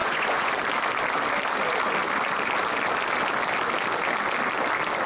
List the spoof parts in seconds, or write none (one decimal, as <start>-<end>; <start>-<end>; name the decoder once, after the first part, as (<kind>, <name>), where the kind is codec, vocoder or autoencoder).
0.0-0.5 (vocoder, Vocos)